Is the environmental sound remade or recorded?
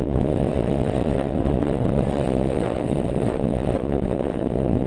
remade